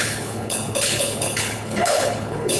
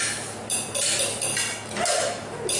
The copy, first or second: first